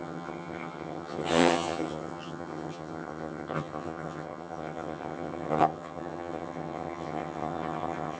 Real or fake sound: fake